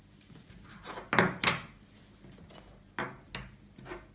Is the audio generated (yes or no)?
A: no